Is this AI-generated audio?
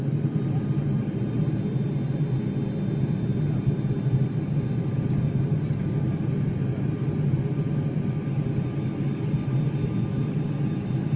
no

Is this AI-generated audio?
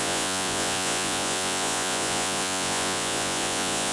yes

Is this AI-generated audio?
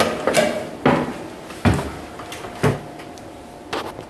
no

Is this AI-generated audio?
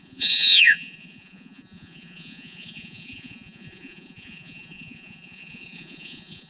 yes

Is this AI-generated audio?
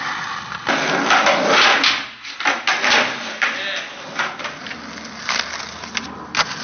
no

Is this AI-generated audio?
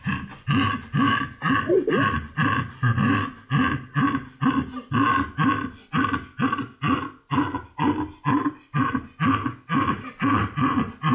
no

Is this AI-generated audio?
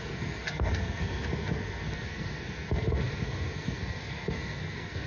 yes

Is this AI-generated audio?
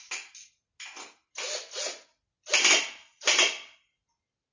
no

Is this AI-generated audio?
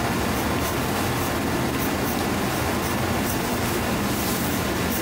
no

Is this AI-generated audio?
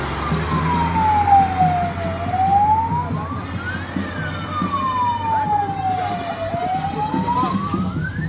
no